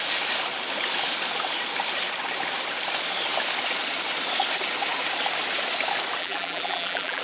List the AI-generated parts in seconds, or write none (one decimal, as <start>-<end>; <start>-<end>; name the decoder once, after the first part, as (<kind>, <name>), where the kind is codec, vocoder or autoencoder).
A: 6.2-7.2 (vocoder, BigVGAN v2)